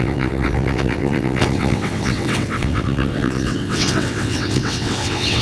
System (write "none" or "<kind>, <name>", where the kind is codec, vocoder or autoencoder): vocoder, WaveNeXt